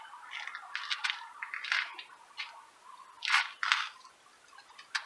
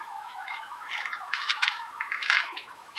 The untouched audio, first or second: first